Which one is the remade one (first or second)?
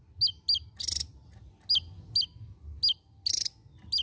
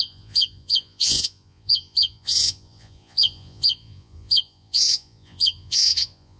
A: second